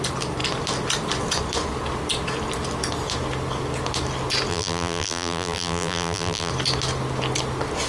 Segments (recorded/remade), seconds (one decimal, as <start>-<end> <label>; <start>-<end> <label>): 0.0-4.5 recorded; 4.5-6.5 remade; 6.5-7.9 recorded